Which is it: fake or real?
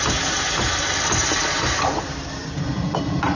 real